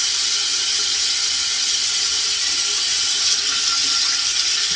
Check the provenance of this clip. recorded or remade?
recorded